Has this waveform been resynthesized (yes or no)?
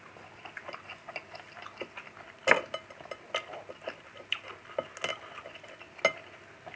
no